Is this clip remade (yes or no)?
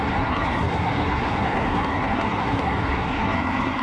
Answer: yes